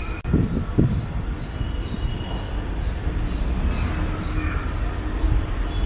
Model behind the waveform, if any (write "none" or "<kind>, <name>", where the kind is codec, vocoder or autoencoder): none